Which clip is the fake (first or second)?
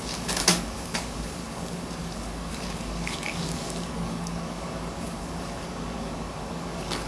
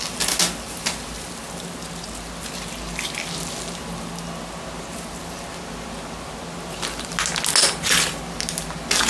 first